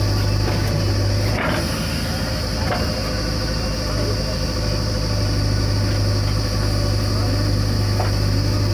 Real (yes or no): yes